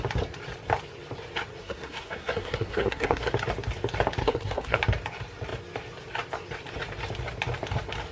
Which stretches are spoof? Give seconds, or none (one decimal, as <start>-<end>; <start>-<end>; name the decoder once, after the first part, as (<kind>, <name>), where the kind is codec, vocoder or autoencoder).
1.6-3.3 (codec, SNAC); 4.2-4.8

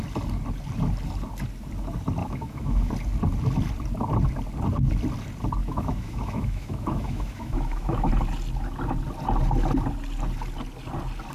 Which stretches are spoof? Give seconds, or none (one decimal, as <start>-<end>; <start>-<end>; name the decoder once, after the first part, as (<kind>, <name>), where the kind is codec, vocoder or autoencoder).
2.2-2.9 (autoencoder, DAC-VAE); 5.6-8.1

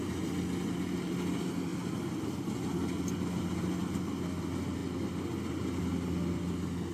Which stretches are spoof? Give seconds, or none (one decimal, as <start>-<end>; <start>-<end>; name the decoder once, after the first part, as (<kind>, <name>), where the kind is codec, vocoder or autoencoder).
none

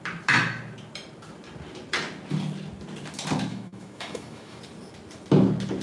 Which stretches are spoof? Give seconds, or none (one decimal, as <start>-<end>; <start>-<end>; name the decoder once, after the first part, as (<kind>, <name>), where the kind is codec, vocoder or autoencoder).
3.5-4.6 (autoencoder, DAC-VAE)

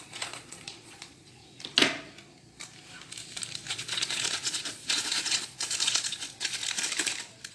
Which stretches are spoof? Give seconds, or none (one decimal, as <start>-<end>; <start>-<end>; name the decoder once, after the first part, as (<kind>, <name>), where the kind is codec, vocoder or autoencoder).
0.0-1.4 (vocoder, Vocos); 3.7-6.6

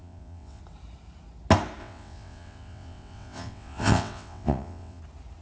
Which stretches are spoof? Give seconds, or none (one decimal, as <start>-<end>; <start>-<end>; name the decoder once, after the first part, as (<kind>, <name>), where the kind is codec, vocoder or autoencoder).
0.0-0.6 (vocoder, WaveNeXt); 1.8-5.0

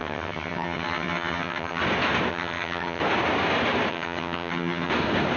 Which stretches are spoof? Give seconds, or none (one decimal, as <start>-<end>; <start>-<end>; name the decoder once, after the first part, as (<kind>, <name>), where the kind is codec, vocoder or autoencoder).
0.0-1.8 (vocoder, HiFi-GAN); 2.3-3.0; 3.9-4.9